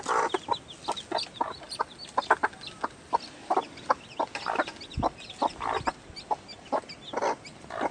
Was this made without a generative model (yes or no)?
yes